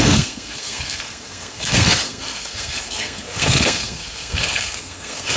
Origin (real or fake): fake